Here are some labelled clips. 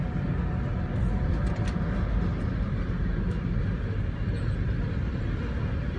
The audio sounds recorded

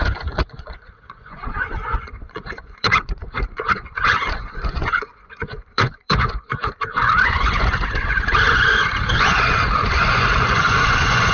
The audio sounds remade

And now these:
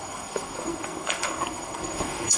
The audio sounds remade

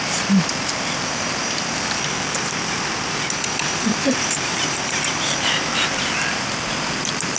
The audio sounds remade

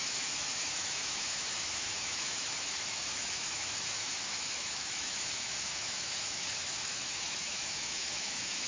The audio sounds remade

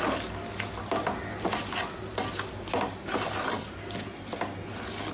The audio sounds recorded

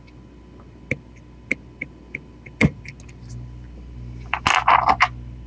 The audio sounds recorded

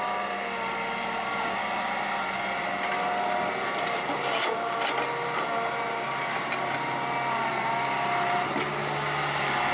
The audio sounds recorded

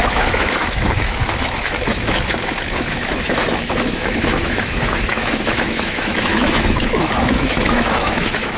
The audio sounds remade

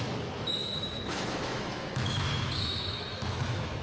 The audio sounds remade